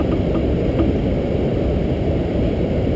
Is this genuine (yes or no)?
yes